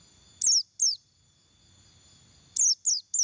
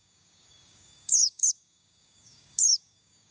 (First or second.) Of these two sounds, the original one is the first